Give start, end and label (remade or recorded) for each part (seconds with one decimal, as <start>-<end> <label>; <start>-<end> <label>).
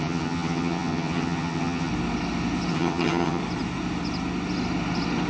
0.0-1.9 remade; 1.9-2.7 recorded; 2.7-3.4 remade; 3.4-5.3 recorded